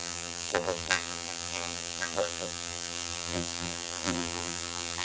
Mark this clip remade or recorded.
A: remade